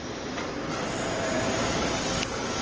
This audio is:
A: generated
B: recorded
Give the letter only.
B